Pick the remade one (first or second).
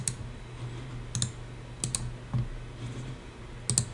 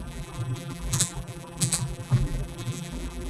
second